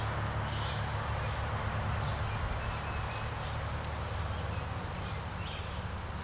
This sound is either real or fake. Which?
real